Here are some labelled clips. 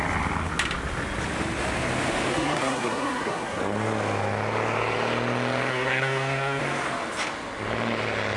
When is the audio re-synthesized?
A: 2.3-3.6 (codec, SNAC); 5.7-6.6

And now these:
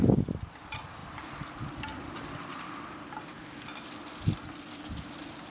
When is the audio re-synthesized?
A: none

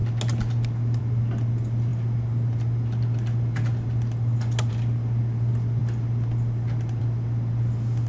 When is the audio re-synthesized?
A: none

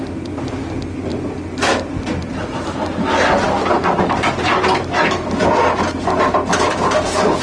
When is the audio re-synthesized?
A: none

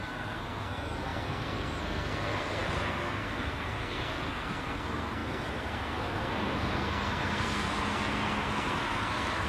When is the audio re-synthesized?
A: 0.0-9.5 (codec, SNAC)

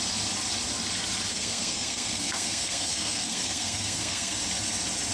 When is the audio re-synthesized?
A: 1.3-4.4 (codec, SNAC)